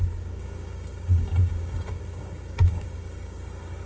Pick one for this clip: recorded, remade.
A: remade